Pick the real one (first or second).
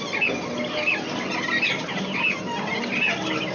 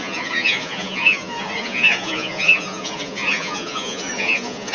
first